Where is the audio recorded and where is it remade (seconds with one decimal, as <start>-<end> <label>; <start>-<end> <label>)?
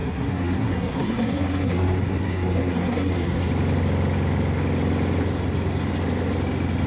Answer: 0.0-3.5 remade; 3.5-6.9 recorded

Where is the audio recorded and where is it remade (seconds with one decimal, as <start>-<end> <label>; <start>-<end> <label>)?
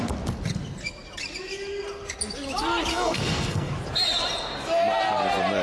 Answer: 0.0-2.9 recorded; 2.9-3.7 remade; 3.7-5.6 recorded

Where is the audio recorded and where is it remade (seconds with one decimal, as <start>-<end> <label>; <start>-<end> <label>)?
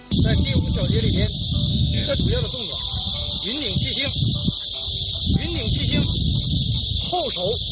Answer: 0.0-1.7 recorded; 1.7-2.2 remade; 2.2-7.7 recorded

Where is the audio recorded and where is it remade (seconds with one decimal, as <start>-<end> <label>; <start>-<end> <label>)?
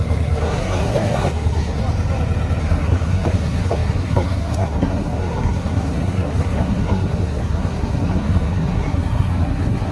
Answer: 0.0-1.8 remade; 1.8-2.6 recorded; 2.6-9.9 remade